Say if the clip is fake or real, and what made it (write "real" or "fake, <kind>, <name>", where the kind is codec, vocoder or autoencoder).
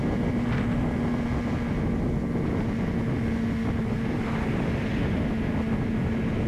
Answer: real